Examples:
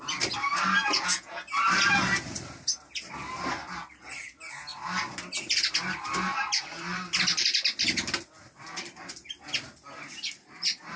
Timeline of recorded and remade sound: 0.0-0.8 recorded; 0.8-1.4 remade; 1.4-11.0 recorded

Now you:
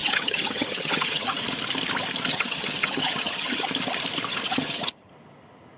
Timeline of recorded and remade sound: 0.0-1.4 remade; 1.4-2.3 recorded; 2.3-3.7 remade; 3.7-4.3 recorded; 4.3-5.1 remade; 5.1-5.8 recorded

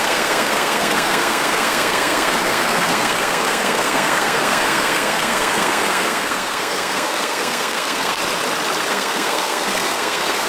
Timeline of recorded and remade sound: 0.0-8.2 remade; 8.2-8.9 recorded; 8.9-10.5 remade

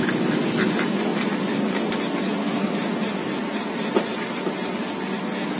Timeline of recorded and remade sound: 0.0-2.8 recorded; 2.8-3.8 remade; 3.8-5.6 recorded

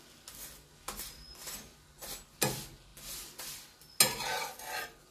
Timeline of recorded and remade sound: 0.0-5.1 recorded

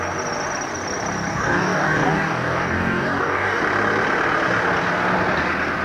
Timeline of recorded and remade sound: 0.0-1.3 recorded; 1.3-3.6 remade; 3.6-5.8 recorded

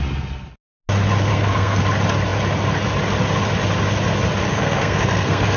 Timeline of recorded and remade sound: 0.0-1.3 recorded; 1.3-1.8 remade; 1.8-4.4 recorded; 4.4-5.6 remade

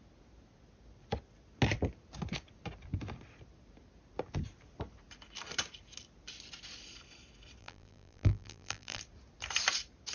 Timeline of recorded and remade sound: 0.0-7.6 recorded; 7.6-9.0 remade; 9.0-10.1 recorded